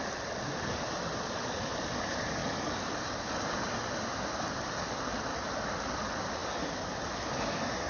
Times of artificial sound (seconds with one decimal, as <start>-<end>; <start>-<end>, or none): none

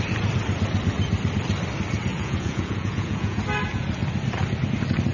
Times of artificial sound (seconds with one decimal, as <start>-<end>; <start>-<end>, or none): 2.1-3.4

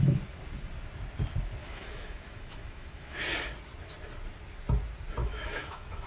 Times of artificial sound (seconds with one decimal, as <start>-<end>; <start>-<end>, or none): 1.6-3.2; 5.2-6.1

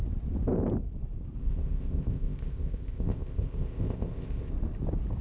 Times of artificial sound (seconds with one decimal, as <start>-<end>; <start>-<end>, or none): 1.4-4.5

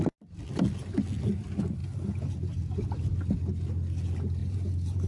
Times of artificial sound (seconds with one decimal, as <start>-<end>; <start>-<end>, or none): 1.8-3.2; 4.4-5.1

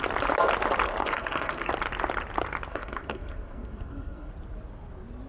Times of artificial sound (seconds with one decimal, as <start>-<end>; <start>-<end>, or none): 1.0-1.7; 2.7-4.3

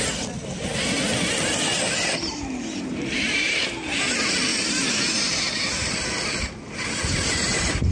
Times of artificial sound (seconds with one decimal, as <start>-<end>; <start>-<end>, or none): none